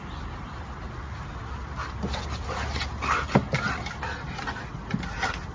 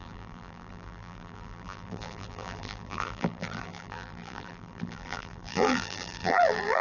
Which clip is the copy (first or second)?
second